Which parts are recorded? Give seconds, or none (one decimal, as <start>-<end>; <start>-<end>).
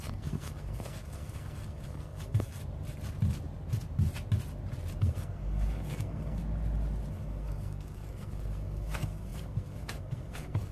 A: 2.6-5.0; 6.4-7.1